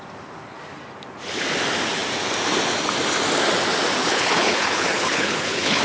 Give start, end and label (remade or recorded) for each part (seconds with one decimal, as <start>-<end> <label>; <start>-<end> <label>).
0.0-4.0 recorded; 4.0-5.8 remade

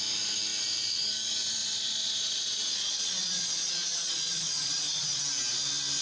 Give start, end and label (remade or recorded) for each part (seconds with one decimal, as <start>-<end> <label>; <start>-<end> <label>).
0.0-1.6 recorded; 1.6-5.2 remade; 5.2-6.0 recorded

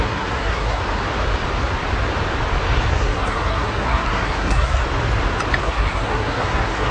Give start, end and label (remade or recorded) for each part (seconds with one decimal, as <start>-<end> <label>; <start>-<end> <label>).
0.0-0.8 remade; 0.8-2.9 recorded; 2.9-4.8 remade; 4.8-5.6 recorded; 5.6-6.9 remade

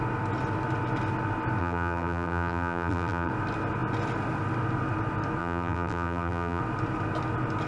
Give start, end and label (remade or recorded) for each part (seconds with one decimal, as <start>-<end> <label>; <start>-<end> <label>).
0.0-1.6 recorded; 1.6-3.3 remade; 3.3-5.4 recorded; 5.4-6.6 remade; 6.6-7.7 recorded

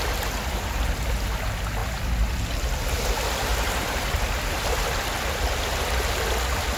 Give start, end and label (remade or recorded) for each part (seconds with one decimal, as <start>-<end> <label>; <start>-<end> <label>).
0.0-1.8 recorded; 1.8-2.4 remade; 2.4-3.5 recorded; 3.5-6.1 remade; 6.1-6.8 recorded

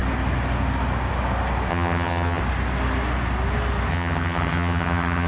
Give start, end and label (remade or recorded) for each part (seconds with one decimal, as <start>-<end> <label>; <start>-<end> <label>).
0.0-1.7 recorded; 1.7-2.4 remade; 2.4-3.9 recorded; 3.9-5.3 remade